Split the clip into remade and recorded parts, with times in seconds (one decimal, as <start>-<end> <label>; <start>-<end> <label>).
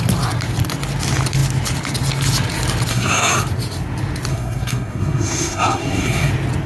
0.0-2.9 recorded; 2.9-3.4 remade; 3.4-4.3 recorded; 4.3-6.3 remade; 6.3-6.7 recorded